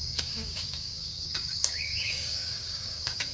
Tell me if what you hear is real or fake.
fake